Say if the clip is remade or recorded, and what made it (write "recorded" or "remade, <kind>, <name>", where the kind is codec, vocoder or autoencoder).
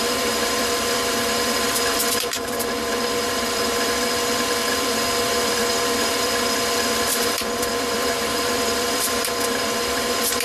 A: remade, vocoder, BigVGAN v2